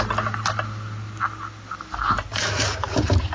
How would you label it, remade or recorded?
recorded